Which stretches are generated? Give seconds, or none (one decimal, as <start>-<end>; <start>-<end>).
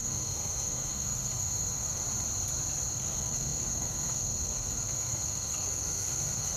0.0-2.0; 2.9-6.6